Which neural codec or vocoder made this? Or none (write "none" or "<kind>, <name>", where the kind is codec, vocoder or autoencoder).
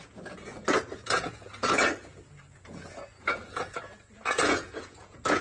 vocoder, Vocos